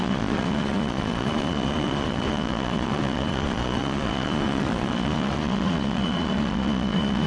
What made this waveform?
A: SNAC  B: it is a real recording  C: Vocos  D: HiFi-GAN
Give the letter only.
C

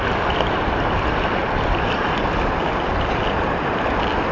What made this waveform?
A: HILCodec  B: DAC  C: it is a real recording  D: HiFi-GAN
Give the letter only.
C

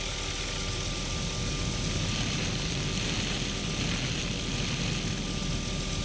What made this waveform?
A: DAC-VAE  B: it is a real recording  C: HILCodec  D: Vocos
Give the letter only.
B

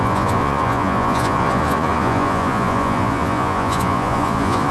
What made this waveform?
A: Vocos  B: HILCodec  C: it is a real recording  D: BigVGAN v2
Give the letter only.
A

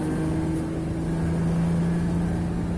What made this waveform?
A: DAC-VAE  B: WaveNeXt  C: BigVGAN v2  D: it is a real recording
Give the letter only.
D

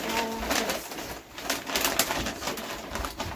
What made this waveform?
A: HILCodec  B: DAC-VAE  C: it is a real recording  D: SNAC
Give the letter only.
C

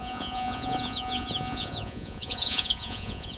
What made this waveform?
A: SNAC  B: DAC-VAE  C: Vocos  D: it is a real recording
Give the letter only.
C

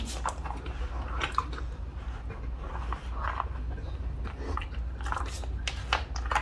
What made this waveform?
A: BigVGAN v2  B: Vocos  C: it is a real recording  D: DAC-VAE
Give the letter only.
C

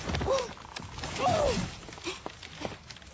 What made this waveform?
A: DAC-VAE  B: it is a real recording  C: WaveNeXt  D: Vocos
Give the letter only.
B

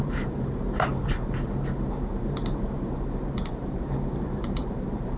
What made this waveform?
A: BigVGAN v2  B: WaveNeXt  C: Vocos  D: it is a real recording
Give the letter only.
A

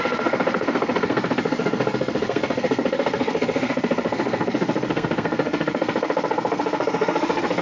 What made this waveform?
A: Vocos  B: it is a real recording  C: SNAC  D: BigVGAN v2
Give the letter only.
C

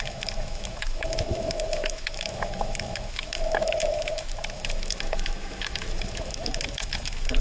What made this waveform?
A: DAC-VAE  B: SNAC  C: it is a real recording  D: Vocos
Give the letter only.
A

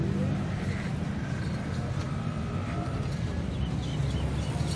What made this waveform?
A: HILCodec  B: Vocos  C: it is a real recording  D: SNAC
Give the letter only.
C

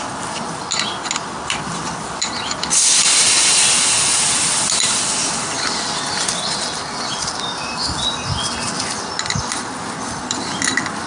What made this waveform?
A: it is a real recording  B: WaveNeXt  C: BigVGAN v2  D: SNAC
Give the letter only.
A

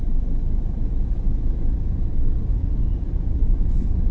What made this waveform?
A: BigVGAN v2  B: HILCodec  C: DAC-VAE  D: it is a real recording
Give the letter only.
D